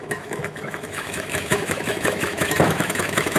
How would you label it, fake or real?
fake